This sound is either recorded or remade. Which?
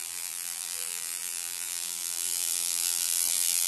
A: remade